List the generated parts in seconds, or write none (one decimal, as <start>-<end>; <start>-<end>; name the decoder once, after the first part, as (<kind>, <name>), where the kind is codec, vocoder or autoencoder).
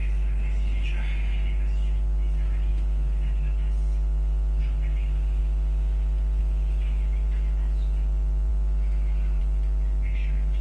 none